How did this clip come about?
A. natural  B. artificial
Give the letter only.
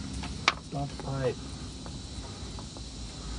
A